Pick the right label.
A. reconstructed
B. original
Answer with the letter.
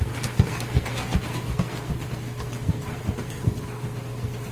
A